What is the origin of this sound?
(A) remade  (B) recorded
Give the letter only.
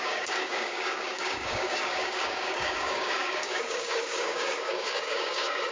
A